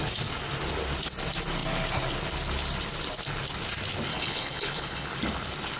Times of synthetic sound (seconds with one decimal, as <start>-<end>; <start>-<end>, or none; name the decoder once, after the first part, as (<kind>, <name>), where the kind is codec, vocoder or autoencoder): 4.1-5.1 (codec, HILCodec)